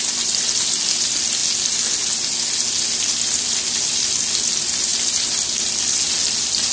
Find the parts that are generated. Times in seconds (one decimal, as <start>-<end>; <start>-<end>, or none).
none